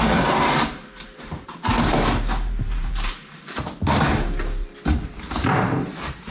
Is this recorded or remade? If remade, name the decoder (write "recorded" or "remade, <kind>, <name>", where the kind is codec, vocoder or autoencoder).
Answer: remade, vocoder, BigVGAN v2